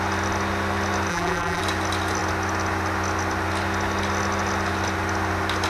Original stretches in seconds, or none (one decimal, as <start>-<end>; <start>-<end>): 0.0-1.1; 1.6-5.7